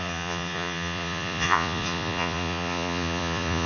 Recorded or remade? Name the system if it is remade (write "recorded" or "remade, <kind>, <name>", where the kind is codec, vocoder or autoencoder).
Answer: remade, vocoder, Vocos